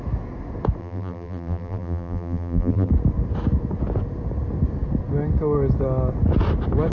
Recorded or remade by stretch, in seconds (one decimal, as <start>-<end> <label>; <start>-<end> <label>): 0.0-0.8 recorded; 0.8-2.9 remade; 2.9-6.9 recorded